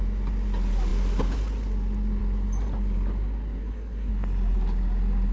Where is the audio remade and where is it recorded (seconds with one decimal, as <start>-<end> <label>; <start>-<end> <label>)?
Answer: 0.0-3.6 recorded; 3.6-4.1 remade; 4.1-5.3 recorded